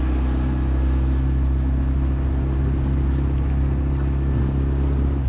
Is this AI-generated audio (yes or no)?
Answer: no